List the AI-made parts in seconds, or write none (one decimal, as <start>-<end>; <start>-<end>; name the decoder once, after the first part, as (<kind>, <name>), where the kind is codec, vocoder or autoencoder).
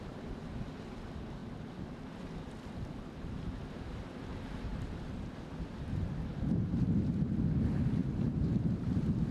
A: 1.4-2.2 (vocoder, BigVGAN v2); 4.7-7.2; 8.0-8.6